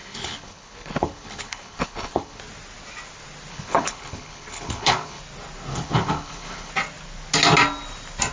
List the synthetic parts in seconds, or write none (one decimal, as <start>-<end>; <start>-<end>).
0.0-2.4; 3.5-5.2; 5.7-6.7